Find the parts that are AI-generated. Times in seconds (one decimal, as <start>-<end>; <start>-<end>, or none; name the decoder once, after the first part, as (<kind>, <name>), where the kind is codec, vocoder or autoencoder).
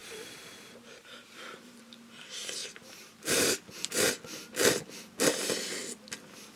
0.0-1.8 (vocoder, BigVGAN v2); 2.6-3.9